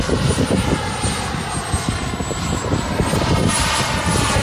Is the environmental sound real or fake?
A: real